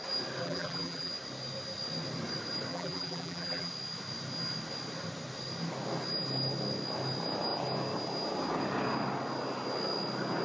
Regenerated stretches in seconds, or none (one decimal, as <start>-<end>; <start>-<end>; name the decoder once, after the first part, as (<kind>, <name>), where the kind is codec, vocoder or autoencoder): 0.4-1.1 (vocoder, BigVGAN v2); 2.7-3.7